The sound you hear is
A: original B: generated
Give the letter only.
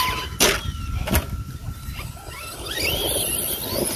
A